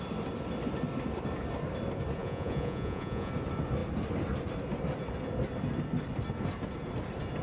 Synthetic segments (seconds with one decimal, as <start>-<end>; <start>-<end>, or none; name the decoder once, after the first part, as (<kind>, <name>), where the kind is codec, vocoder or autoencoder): 2.2-3.3 (vocoder, Vocos)